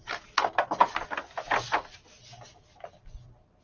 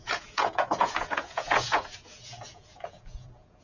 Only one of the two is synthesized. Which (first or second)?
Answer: second